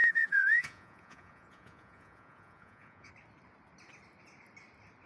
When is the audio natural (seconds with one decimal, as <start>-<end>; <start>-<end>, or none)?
3.1-5.1